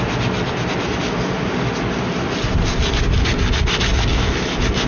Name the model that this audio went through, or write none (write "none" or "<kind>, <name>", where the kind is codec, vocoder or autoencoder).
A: none